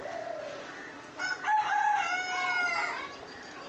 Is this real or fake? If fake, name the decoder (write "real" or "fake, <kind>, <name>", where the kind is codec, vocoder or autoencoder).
real